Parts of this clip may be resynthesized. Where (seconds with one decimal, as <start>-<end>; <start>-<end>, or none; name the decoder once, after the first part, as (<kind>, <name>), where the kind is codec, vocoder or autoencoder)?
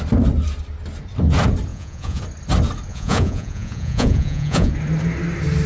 1.7-2.2 (vocoder, Vocos); 2.9-4.7